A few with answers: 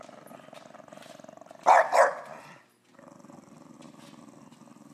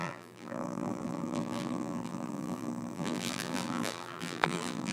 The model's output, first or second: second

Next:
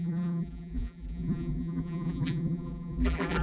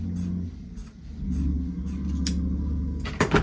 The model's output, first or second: first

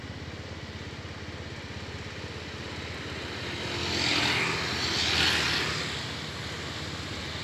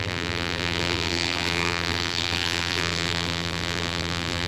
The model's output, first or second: second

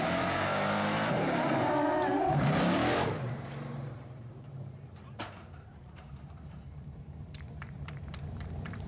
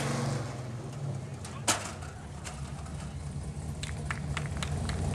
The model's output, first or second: first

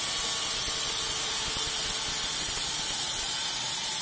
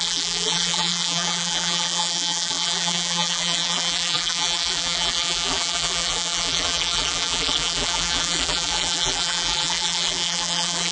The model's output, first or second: second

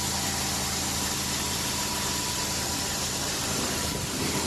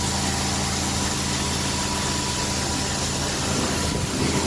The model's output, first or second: first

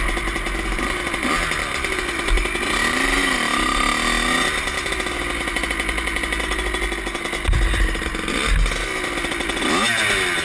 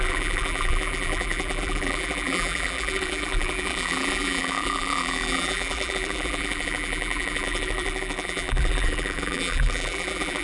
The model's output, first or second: second